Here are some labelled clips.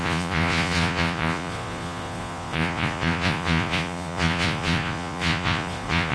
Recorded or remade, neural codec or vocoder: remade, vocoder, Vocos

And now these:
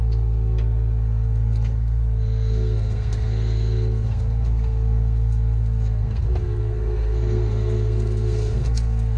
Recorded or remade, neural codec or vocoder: remade, codec, SNAC